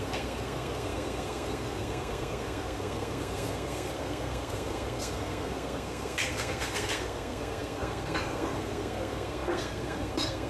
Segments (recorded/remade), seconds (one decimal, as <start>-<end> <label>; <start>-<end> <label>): 0.0-10.5 remade